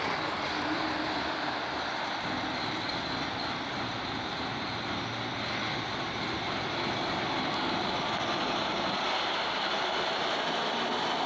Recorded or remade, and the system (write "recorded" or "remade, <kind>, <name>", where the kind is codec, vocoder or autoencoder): recorded